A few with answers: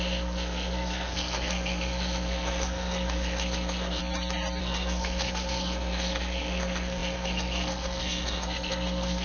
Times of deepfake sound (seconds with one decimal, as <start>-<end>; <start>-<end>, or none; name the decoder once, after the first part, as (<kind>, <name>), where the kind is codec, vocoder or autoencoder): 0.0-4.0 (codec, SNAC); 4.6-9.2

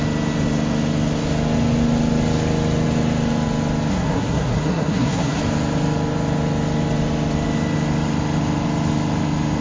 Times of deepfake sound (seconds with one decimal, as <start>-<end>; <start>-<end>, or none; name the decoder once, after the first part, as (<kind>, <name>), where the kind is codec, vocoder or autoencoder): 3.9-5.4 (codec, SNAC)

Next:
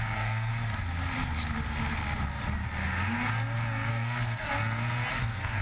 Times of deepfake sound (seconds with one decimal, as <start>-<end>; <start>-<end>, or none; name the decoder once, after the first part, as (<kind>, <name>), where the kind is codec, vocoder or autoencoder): 0.0-0.5 (codec, SNAC); 3.9-4.5; 5.1-5.6